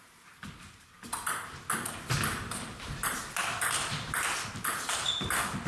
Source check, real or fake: real